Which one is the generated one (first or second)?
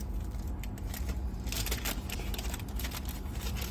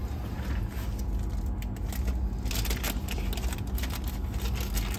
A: first